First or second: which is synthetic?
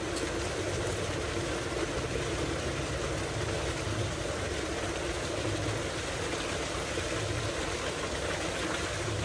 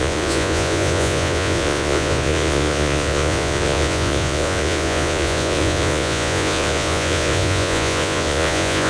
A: second